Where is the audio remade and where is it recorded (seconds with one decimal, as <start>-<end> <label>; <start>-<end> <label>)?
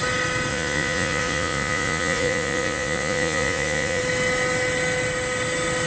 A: 0.0-0.5 recorded; 0.5-4.0 remade; 4.0-5.9 recorded